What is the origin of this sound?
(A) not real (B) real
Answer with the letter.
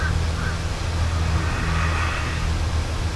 B